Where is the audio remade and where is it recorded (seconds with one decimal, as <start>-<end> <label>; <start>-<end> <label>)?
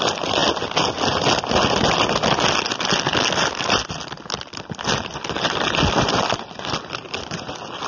0.0-7.9 recorded